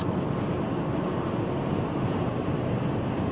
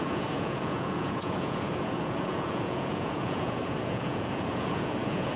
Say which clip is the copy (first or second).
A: second